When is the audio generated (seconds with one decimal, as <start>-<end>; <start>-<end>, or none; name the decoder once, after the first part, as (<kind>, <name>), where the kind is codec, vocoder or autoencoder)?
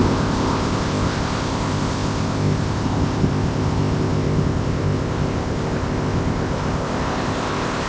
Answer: 0.0-7.9 (codec, ZipCodec)